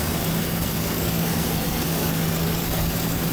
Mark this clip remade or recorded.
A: remade